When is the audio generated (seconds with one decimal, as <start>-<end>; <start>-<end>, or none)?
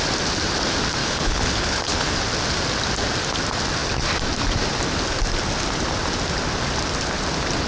1.0-2.2